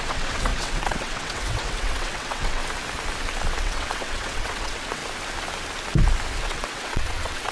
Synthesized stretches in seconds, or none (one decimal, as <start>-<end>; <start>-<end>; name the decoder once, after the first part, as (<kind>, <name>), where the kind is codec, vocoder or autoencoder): 0.0-2.6 (vocoder, WaveNeXt); 3.6-5.0; 6.4-7.5